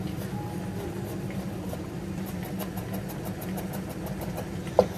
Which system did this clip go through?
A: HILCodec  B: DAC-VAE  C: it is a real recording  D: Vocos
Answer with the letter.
C